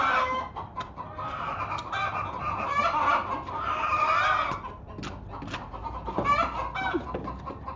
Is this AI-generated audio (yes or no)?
no